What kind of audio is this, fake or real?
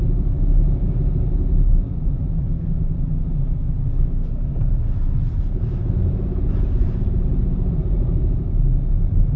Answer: real